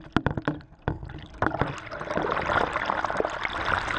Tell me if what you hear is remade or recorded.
recorded